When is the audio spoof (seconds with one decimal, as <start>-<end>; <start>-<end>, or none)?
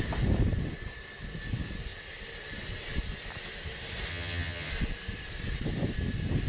4.1-4.7